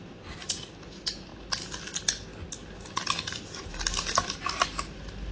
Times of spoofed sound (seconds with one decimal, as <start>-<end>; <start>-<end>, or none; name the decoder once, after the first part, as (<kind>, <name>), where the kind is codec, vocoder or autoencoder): none